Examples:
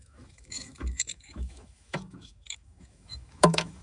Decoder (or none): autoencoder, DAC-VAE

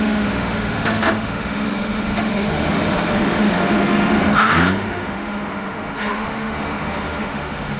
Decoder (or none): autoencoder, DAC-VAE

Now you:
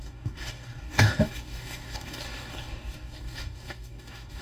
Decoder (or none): codec, DAC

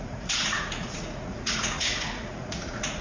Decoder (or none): vocoder, Vocos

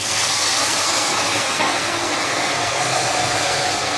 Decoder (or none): codec, SNAC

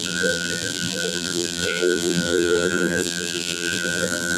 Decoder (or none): vocoder, BigVGAN v2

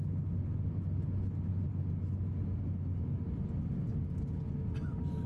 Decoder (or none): none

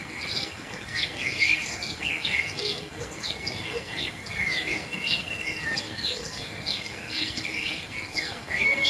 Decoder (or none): codec, SNAC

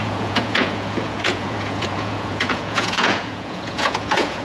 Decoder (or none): vocoder, Vocos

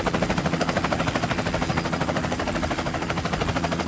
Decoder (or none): none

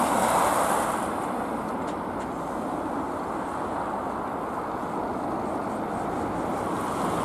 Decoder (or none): none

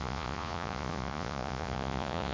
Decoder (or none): vocoder, Vocos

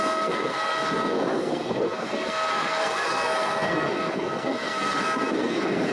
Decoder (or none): codec, SNAC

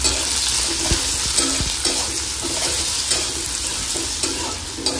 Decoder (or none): none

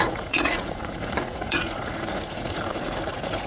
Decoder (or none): vocoder, Vocos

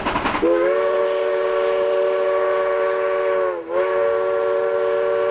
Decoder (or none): none